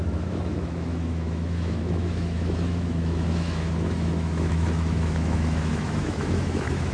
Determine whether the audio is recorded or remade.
remade